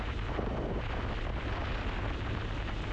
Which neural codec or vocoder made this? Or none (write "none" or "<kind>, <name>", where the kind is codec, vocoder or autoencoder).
none